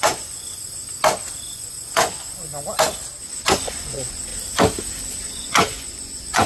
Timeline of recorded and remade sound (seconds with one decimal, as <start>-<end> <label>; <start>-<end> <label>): 0.0-0.8 remade; 0.8-1.4 recorded; 1.4-2.5 remade; 2.5-3.5 recorded; 3.5-4.3 remade; 4.3-5.2 recorded; 5.2-6.5 remade